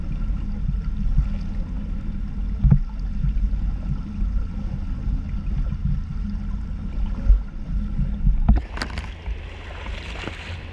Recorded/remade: recorded